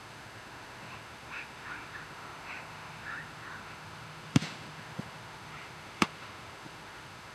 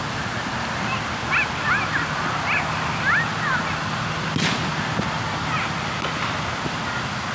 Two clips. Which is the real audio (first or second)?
second